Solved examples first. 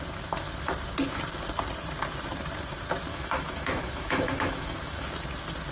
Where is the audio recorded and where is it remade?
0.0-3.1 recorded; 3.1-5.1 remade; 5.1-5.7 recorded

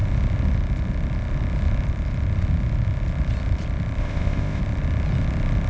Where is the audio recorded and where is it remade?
0.0-4.0 recorded; 4.0-4.6 remade; 4.6-5.7 recorded

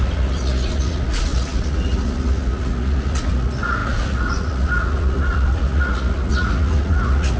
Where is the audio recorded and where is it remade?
0.0-7.4 remade